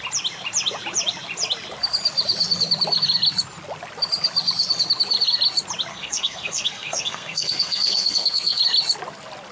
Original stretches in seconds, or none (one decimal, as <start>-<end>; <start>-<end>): 0.0-5.9; 8.6-9.5

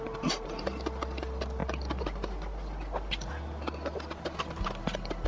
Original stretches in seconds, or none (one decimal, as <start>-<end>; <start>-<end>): 0.0-5.3

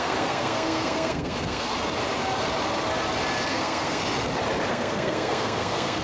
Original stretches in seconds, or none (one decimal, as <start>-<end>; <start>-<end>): 1.7-3.5; 4.0-4.7

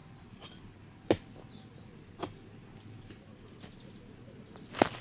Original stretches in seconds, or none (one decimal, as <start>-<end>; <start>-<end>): 0.0-5.0

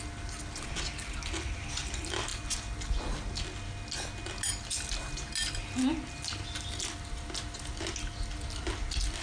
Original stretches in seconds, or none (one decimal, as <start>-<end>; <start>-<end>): 0.0-9.2

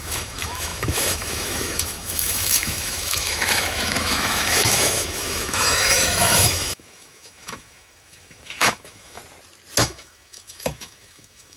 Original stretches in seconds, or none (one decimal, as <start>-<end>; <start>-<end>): 9.2-9.8

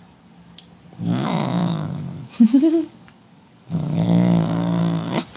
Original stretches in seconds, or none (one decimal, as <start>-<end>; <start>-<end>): 0.0-1.6; 4.8-5.4